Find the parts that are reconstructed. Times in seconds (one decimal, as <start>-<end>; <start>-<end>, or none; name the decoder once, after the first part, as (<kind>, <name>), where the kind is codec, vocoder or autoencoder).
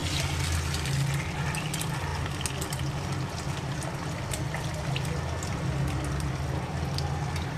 none